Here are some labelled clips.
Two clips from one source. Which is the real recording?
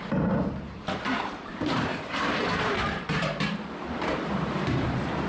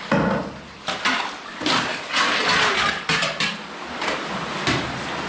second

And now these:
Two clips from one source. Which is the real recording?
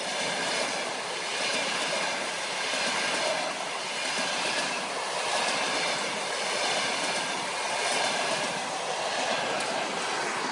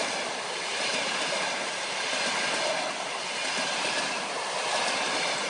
first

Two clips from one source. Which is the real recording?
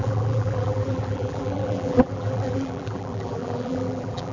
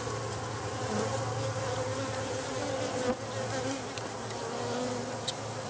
second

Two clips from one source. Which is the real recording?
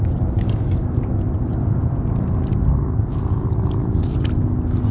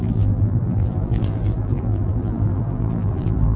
first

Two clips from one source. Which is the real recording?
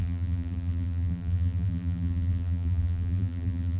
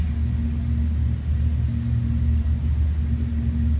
second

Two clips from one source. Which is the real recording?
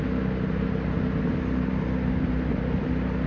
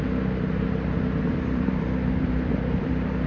first